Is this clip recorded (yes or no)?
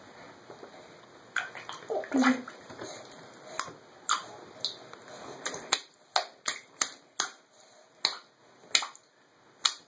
yes